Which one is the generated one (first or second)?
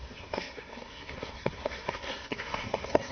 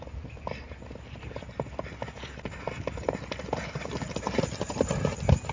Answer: first